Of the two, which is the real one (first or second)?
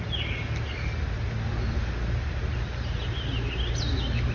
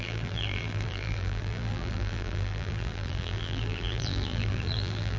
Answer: first